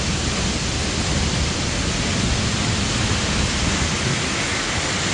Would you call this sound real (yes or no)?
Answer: yes